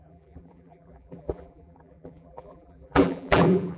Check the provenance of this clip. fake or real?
fake